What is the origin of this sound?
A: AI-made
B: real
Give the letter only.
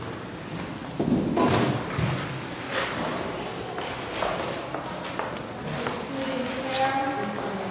B